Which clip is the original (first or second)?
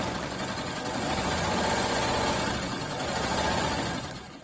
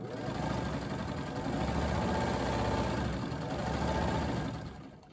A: second